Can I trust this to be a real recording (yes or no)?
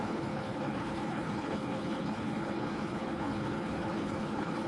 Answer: no